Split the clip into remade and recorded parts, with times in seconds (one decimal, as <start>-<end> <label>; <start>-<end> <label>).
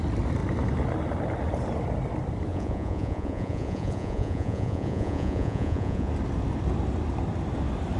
0.0-2.5 recorded; 2.5-6.1 remade; 6.1-8.0 recorded